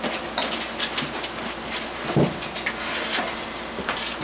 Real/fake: real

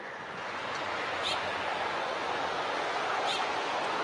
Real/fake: fake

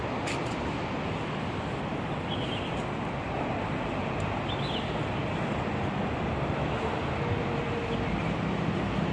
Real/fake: real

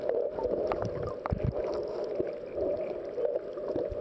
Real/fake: real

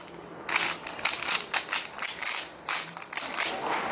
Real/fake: real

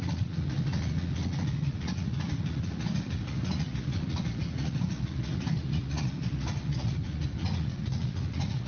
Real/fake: fake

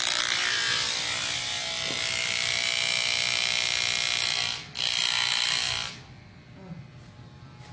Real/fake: real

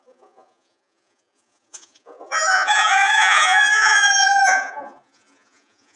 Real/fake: fake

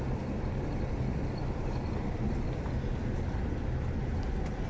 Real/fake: real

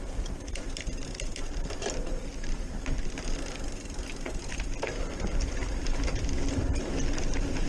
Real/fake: real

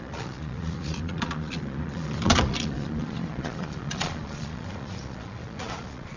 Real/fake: fake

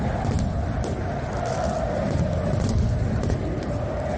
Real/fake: real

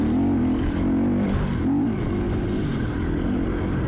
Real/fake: real